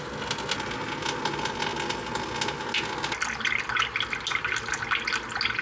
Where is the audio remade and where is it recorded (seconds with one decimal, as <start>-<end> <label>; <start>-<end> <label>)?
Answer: 0.0-5.6 recorded

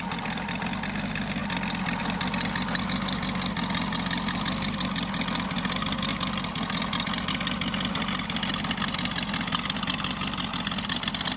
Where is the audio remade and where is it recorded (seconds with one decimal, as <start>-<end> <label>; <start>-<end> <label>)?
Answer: 0.0-11.4 recorded

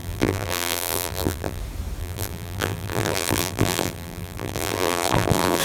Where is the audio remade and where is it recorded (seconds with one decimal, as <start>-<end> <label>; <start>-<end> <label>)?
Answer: 0.0-1.6 remade; 1.6-2.0 recorded; 2.0-5.6 remade

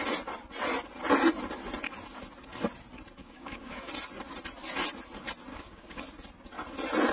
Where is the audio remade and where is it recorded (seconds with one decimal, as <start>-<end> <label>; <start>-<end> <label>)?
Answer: 0.0-3.2 recorded; 3.2-3.9 remade; 3.9-5.5 recorded; 5.5-6.0 remade; 6.0-7.1 recorded

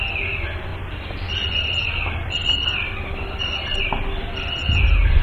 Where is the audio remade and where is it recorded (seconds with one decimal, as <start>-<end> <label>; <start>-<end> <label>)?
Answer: 0.0-5.2 recorded

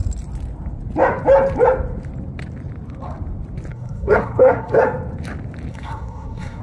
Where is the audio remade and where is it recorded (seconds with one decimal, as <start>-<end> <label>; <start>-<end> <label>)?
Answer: 0.0-3.7 recorded; 3.7-4.8 remade; 4.8-5.7 recorded; 5.7-6.6 remade